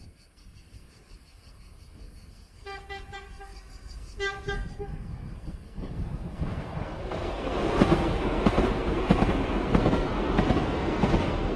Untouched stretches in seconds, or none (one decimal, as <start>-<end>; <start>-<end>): none